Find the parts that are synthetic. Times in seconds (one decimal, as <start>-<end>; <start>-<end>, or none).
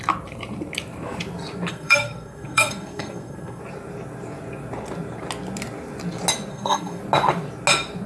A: 1.7-3.6; 6.5-7.0